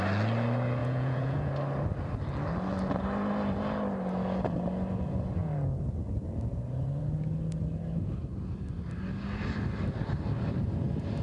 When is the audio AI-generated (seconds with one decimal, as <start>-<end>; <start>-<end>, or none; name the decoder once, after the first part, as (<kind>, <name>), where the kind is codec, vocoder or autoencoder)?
0.8-1.5 (vocoder, Vocos)